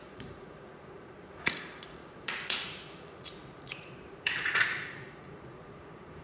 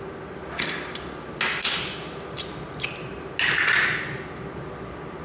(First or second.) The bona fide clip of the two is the second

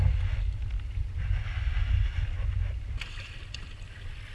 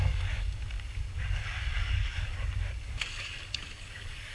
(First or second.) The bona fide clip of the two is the first